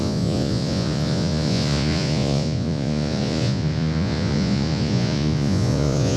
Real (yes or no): no